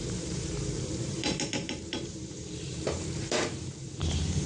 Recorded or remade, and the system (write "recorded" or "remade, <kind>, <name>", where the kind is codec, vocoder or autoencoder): remade, vocoder, BigVGAN v2